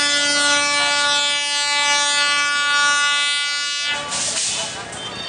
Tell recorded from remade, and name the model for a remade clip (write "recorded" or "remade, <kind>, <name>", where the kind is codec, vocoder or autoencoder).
recorded